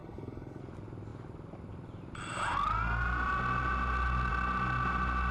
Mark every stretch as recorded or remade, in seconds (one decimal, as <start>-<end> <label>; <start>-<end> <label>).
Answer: 0.0-0.6 remade; 0.6-5.3 recorded